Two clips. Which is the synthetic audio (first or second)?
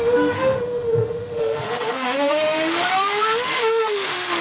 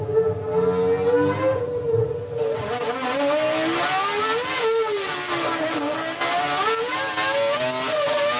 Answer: first